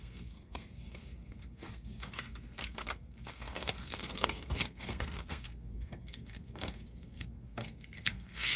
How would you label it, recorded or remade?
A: remade